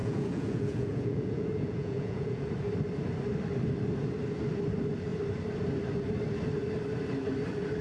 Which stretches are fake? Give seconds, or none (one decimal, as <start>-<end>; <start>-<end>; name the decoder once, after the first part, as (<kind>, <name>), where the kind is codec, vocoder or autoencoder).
0.0-2.5 (vocoder, Vocos)